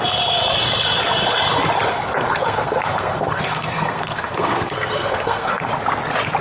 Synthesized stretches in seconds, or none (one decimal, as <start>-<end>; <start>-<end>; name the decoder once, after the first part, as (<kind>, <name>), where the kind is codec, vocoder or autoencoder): 1.9-5.7 (codec, SNAC)